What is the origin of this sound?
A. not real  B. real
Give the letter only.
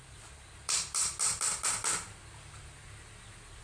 B